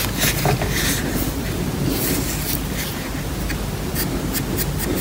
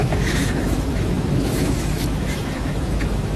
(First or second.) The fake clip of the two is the second